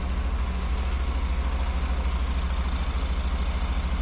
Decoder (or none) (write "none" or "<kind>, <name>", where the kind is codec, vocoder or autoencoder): none